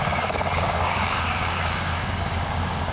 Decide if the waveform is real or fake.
fake